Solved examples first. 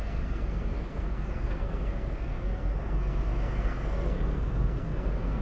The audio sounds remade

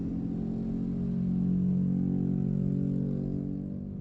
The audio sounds recorded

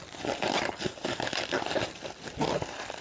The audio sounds remade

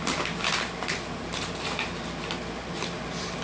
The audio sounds recorded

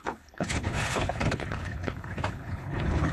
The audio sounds remade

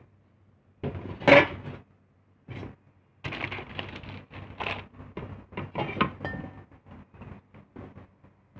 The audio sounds recorded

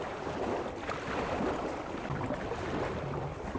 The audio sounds remade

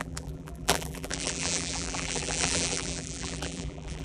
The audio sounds remade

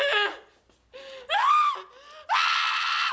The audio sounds recorded